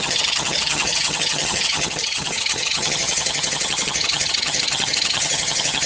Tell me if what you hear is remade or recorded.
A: remade